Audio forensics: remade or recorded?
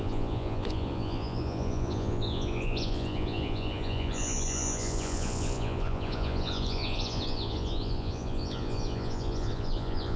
remade